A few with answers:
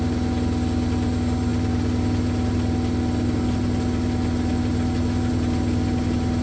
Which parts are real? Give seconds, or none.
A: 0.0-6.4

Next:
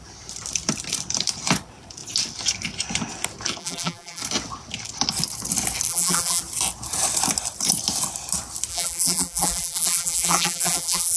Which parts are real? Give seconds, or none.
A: 0.0-3.6; 4.2-5.9; 6.4-8.7

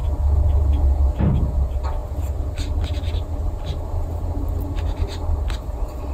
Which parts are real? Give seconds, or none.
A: 0.0-6.1

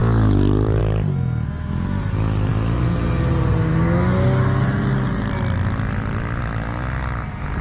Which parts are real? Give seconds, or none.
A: 0.8-7.6

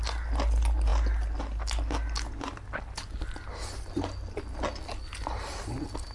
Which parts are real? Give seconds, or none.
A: 0.0-6.1